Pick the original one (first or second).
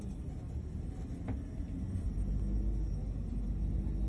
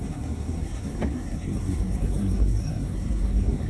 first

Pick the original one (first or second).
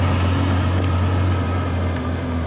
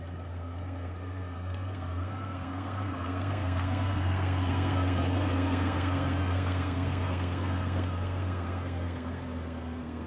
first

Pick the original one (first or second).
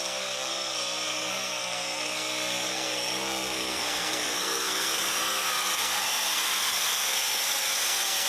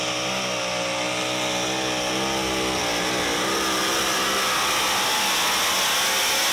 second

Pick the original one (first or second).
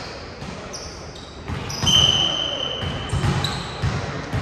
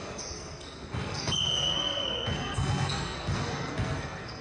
first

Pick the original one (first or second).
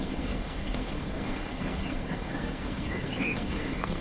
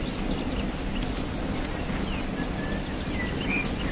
second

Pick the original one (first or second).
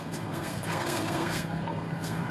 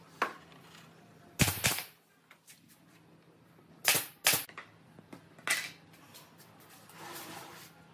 second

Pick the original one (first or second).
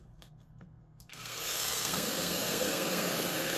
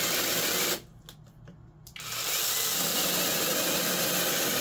second